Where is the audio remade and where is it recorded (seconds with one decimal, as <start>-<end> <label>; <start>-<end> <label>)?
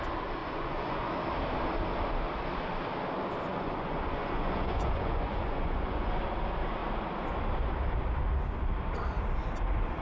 0.0-0.4 recorded; 0.4-1.1 remade; 1.1-3.5 recorded; 3.5-6.2 remade; 6.2-10.0 recorded